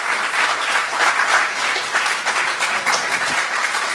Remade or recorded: recorded